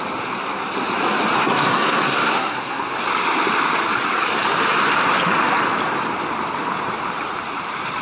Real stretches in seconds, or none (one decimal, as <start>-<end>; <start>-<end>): 0.0-1.4; 2.9-8.0

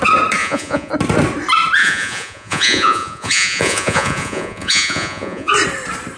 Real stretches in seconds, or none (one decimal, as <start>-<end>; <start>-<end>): 0.0-0.4; 0.9-1.8; 5.5-6.2

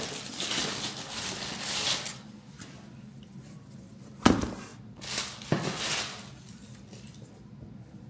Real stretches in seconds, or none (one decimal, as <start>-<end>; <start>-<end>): 0.0-8.1

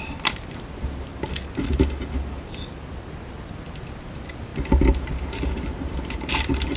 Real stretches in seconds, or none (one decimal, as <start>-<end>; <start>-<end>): 1.1-3.8; 4.5-6.3

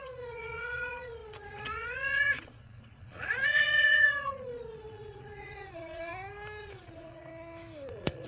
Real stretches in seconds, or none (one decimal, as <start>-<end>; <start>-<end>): 6.1-6.6; 7.3-7.9

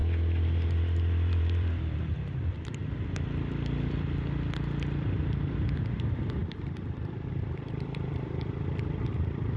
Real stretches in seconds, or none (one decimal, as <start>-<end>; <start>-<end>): none